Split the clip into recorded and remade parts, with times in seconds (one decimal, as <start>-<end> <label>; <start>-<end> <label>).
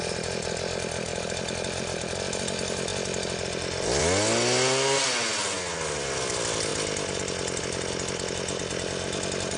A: 0.0-9.6 recorded